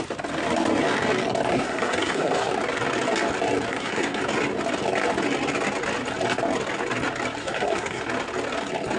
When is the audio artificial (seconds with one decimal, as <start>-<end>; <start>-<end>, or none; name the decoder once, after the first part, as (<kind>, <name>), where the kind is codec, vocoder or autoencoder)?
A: 1.5-2.5 (codec, SNAC); 3.7-4.2; 7.4-8.0